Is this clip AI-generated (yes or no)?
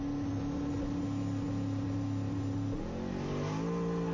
no